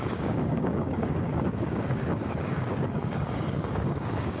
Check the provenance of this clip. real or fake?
fake